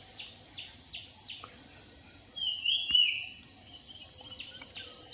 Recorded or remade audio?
recorded